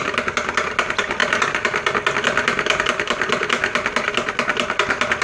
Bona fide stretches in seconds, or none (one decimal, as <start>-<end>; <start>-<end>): 0.0-5.2